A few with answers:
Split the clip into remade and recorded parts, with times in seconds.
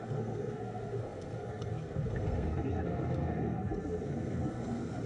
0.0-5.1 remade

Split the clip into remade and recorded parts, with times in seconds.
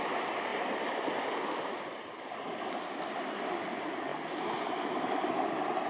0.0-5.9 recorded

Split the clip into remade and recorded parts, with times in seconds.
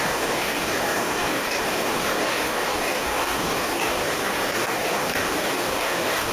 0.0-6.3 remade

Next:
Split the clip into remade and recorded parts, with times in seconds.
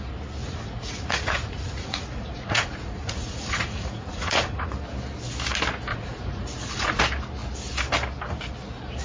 0.0-0.4 recorded; 0.4-4.7 remade; 4.7-5.9 recorded; 5.9-7.0 remade; 7.0-9.0 recorded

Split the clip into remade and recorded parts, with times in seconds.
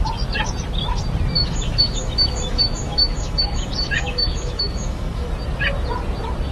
0.0-1.4 recorded; 1.4-5.3 remade; 5.3-6.5 recorded